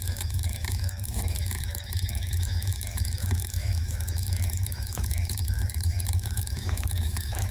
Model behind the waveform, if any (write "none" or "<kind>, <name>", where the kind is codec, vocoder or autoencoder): autoencoder, DAC-VAE